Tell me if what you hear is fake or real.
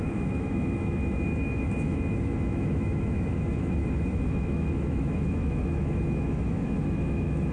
fake